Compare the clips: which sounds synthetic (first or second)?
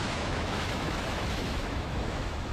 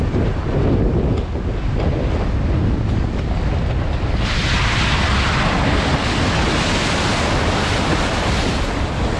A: first